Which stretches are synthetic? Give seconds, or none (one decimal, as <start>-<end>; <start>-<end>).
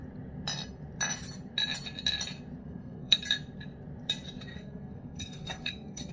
2.6-3.2; 4.5-6.1